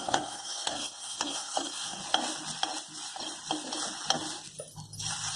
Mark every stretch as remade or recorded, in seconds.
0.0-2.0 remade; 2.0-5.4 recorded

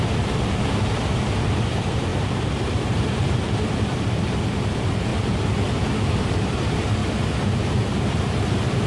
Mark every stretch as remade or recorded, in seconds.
0.0-5.1 remade; 5.1-6.1 recorded; 6.1-7.0 remade; 7.0-7.6 recorded; 7.6-8.9 remade

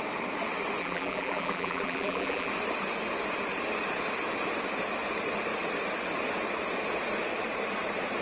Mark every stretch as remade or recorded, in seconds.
0.0-0.8 recorded; 0.8-2.5 remade; 2.5-8.2 recorded

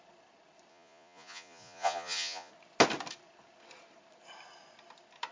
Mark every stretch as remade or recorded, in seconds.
0.0-0.7 recorded; 0.7-2.5 remade; 2.5-5.3 recorded

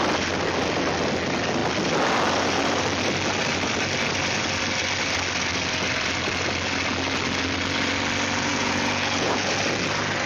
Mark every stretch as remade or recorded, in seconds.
0.0-8.5 recorded; 8.5-9.5 remade; 9.5-10.3 recorded